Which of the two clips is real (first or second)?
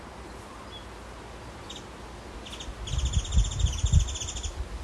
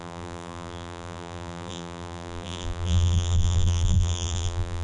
first